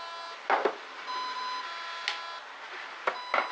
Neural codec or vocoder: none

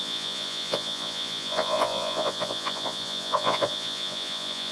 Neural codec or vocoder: vocoder, Vocos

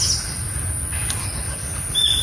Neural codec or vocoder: none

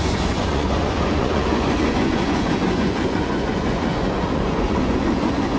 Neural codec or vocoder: vocoder, Vocos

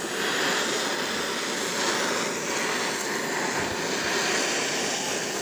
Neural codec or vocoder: none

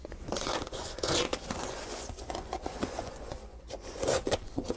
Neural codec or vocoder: vocoder, Vocos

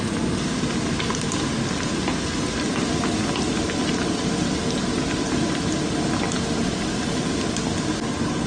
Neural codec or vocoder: none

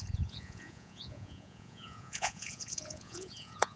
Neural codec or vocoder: vocoder, Vocos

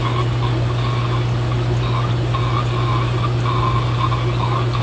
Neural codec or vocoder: none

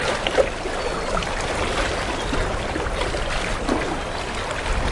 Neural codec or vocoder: none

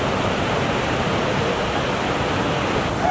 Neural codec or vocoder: none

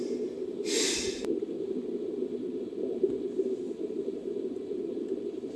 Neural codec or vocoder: none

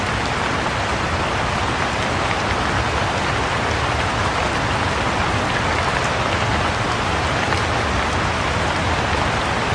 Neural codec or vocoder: none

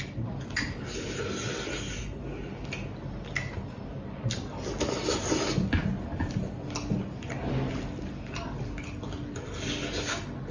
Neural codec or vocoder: none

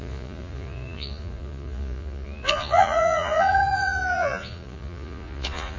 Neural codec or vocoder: vocoder, Vocos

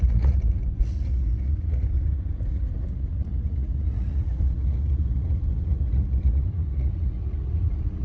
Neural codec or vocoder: vocoder, Vocos